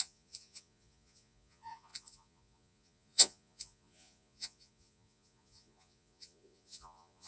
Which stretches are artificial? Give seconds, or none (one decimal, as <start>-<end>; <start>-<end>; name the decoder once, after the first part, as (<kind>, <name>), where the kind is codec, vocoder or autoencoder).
0.0-7.3 (vocoder, Vocos)